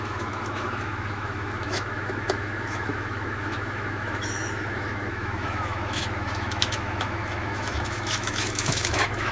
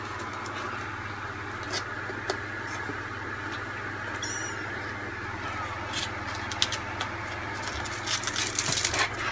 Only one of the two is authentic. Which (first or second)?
second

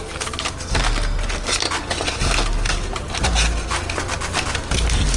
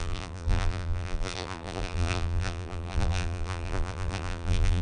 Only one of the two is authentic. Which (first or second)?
first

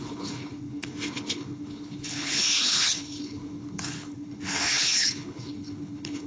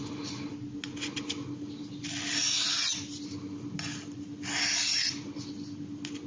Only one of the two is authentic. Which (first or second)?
second